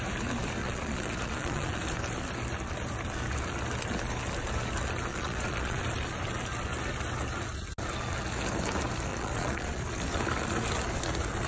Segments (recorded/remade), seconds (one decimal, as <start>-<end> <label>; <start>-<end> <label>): 0.0-0.6 recorded; 0.6-1.8 remade; 1.8-5.1 recorded; 5.1-5.8 remade; 5.8-9.1 recorded; 9.1-9.8 remade; 9.8-11.5 recorded